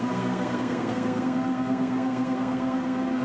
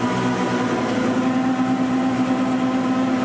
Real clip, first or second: second